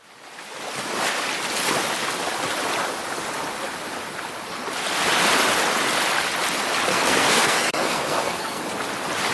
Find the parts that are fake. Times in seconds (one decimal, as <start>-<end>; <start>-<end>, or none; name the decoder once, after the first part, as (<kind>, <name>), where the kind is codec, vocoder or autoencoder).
6.9-8.6 (codec, SNAC)